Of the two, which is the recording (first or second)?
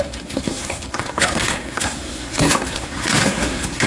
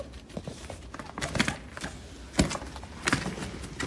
second